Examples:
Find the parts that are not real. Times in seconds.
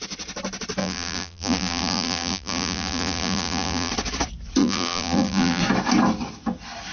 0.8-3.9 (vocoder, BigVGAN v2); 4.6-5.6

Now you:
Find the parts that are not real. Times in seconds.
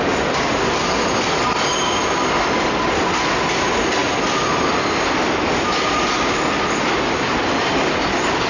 none